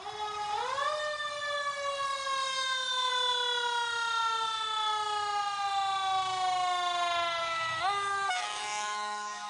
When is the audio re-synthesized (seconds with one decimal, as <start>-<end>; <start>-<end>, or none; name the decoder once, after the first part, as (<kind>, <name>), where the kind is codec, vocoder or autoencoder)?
2.5-3.1 (autoencoder, DAC-VAE); 7.4-9.5

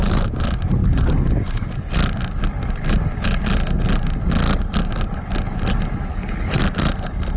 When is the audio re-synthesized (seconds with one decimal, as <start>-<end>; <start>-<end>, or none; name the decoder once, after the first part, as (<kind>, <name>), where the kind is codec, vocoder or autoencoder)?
6.1-6.6 (codec, HILCodec)

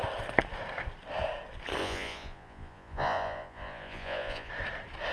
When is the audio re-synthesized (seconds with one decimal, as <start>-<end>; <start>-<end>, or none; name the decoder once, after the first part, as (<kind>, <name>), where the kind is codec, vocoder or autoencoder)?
1.8-4.5 (vocoder, Vocos)

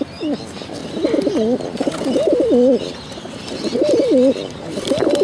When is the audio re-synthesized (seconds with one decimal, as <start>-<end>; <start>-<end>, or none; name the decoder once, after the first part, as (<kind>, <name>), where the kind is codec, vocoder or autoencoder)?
none

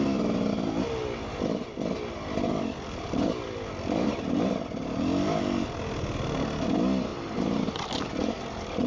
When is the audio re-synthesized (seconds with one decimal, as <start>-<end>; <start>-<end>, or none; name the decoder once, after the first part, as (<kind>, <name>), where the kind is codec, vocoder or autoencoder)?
7.1-7.9 (vocoder, BigVGAN v2)

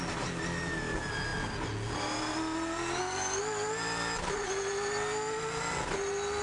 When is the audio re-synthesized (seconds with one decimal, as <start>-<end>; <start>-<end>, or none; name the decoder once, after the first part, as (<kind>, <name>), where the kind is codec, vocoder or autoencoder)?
none

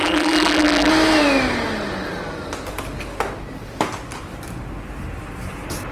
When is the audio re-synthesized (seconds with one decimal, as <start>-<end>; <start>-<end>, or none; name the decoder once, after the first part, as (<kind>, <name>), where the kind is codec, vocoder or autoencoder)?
0.0-0.9 (vocoder, BigVGAN v2)